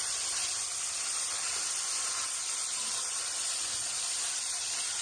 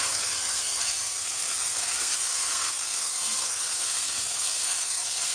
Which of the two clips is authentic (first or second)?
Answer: first